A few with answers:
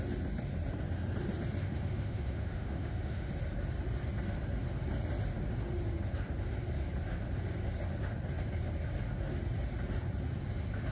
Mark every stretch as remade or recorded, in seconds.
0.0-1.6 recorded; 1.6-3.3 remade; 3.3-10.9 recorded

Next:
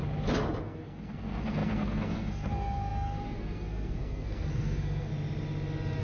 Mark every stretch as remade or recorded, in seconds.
0.0-0.6 recorded; 0.6-5.1 remade; 5.1-6.0 recorded

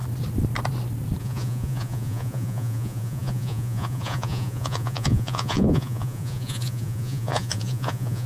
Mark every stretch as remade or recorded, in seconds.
0.0-1.2 recorded; 1.2-8.3 remade

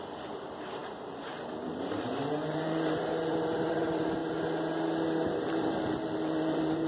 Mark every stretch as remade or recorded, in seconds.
0.0-4.2 remade; 4.2-5.3 recorded; 5.3-6.9 remade

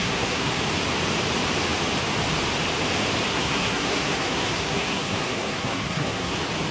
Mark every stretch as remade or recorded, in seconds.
0.0-0.6 remade; 0.6-3.3 recorded; 3.3-6.3 remade; 6.3-6.7 recorded

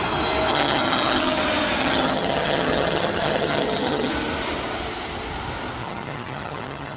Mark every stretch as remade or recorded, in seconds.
0.0-0.5 recorded; 0.5-1.4 remade; 1.4-1.8 recorded; 1.8-4.1 remade; 4.1-5.8 recorded; 5.8-7.0 remade

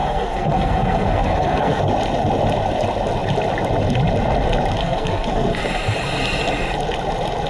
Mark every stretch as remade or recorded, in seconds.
0.0-1.8 remade; 1.8-4.8 recorded; 4.8-5.6 remade; 5.6-7.5 recorded